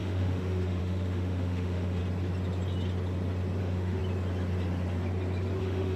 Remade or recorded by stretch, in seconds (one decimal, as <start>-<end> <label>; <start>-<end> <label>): 0.0-2.0 remade; 2.0-3.6 recorded; 3.6-4.0 remade; 4.0-5.6 recorded; 5.6-6.0 remade